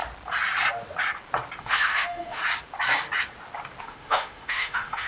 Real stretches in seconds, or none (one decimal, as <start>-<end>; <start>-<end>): 0.0-1.6; 2.4-3.8